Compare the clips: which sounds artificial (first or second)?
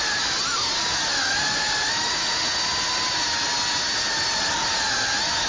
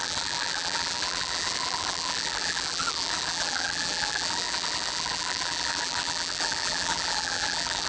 second